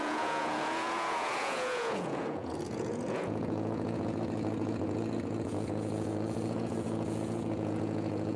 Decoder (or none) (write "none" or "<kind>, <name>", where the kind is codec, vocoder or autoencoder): vocoder, Vocos